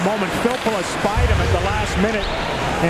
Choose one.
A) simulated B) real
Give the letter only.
B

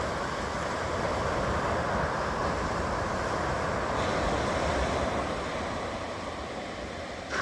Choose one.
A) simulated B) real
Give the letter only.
B